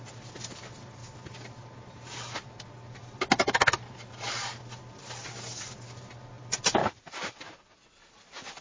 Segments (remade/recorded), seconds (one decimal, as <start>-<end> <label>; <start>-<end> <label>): 0.0-8.6 recorded